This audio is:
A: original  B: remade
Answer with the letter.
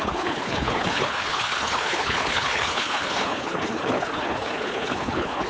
B